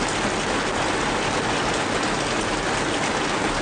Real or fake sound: real